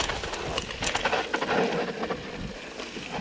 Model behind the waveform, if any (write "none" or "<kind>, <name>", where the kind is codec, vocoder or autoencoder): none